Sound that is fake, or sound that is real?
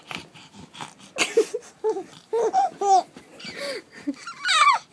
real